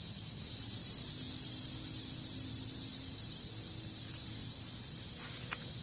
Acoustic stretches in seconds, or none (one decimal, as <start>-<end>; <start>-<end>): 0.0-0.8; 1.6-2.9; 3.5-4.4